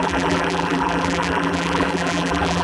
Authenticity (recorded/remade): remade